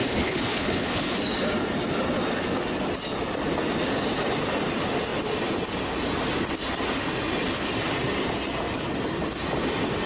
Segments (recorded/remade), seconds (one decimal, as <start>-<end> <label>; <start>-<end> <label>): 0.0-1.2 remade; 1.2-10.1 recorded